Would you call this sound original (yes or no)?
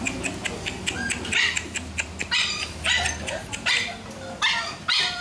yes